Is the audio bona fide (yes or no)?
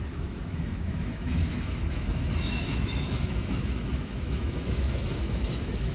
no